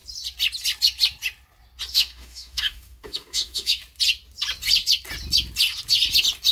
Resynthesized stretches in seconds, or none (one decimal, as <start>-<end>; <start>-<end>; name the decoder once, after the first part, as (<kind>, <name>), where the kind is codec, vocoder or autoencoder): 1.9-3.8 (autoencoder, DAC-VAE)